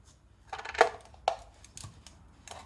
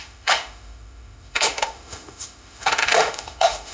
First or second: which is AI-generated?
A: second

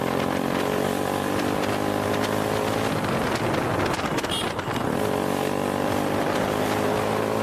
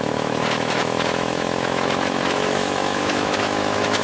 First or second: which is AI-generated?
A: second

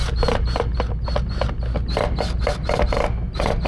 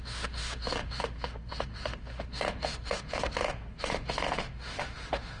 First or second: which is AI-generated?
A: second